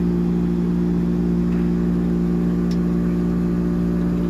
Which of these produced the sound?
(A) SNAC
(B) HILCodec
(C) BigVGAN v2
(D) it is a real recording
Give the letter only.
D